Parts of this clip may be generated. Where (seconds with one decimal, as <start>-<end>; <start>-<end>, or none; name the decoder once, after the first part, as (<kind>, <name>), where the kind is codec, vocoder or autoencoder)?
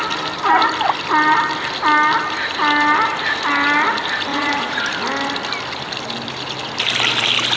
4.3-4.8 (vocoder, Vocos)